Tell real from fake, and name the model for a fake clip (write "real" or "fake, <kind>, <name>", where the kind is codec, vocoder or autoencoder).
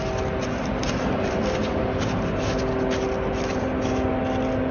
real